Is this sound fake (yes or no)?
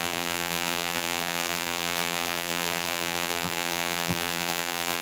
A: yes